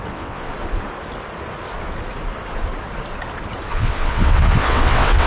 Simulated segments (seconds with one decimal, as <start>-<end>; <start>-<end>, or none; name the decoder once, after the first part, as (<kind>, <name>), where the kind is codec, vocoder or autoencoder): 0.0-0.5 (vocoder, WaveNeXt); 3.7-5.3